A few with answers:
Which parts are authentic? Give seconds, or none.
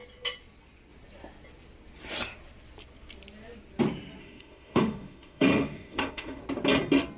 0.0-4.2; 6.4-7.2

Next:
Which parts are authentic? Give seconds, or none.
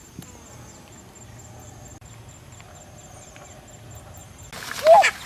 0.0-5.3